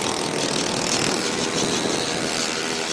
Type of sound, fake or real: real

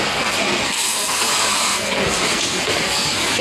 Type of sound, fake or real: fake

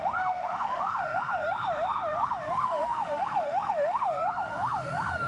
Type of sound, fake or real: fake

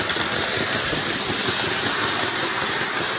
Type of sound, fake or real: real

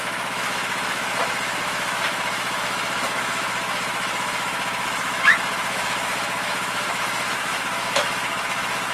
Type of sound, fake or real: fake